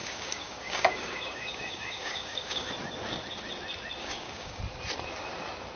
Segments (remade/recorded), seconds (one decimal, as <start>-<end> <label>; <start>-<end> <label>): 0.0-2.7 remade; 2.7-4.0 recorded; 4.0-4.6 remade; 4.6-5.8 recorded